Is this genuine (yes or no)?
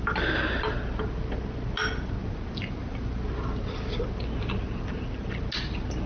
yes